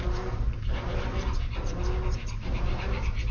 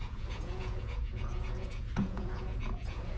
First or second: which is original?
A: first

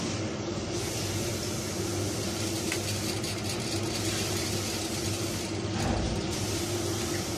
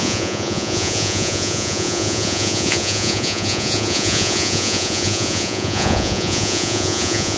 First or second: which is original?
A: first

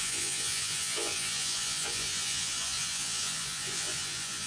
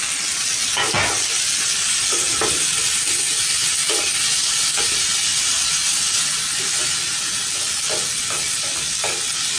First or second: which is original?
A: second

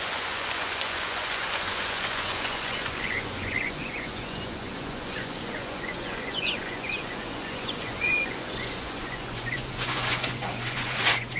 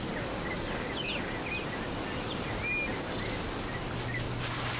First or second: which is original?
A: second